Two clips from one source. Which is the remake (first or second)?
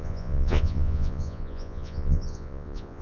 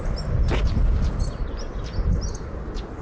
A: first